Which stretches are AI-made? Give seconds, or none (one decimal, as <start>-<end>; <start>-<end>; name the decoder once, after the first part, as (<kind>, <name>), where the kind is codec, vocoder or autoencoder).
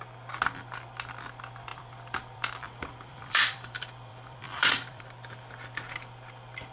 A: 1.7-5.0 (vocoder, BigVGAN v2)